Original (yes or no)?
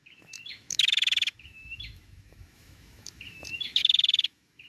no